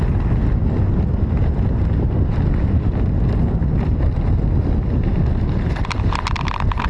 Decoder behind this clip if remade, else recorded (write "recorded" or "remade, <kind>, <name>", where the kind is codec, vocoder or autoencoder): recorded